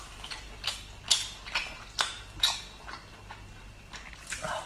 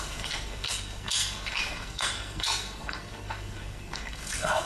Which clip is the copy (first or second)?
second